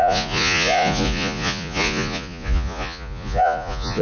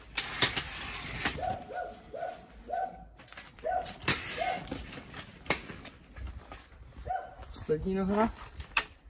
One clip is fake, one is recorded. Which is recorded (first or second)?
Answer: second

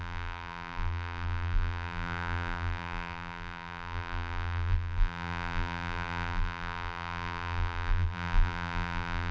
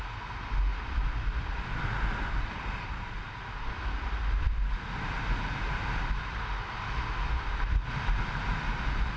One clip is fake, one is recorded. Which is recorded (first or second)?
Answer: second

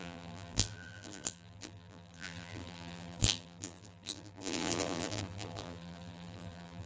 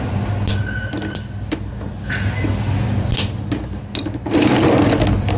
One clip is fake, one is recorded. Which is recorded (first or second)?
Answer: second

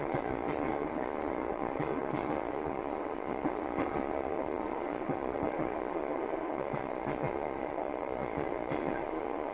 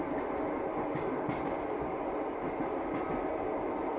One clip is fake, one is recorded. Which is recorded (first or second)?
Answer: second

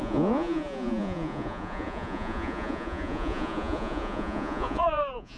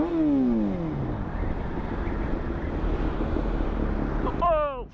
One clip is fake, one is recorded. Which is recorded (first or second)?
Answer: second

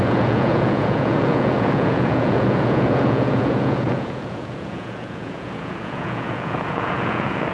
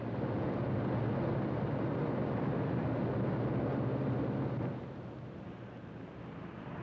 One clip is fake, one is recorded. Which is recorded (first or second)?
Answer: second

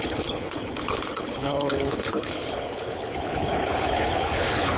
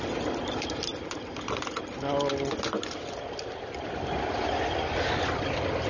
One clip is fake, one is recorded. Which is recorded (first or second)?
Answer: second